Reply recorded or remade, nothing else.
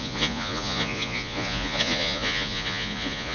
remade